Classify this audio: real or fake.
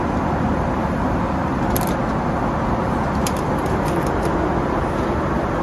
real